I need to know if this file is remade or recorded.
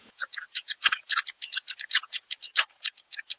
remade